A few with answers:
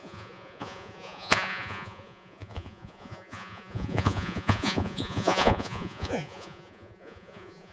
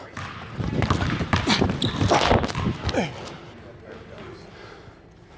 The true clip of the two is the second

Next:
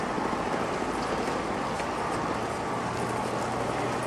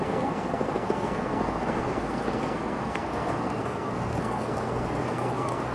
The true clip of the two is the first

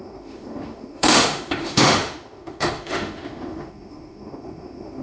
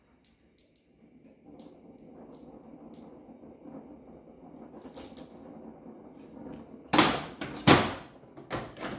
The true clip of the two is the second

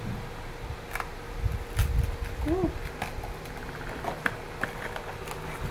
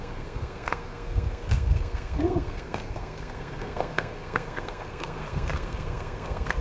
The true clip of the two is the first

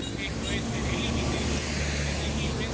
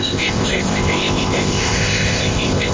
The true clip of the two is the first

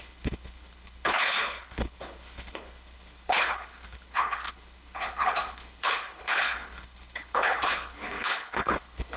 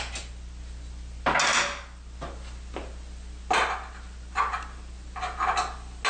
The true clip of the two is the second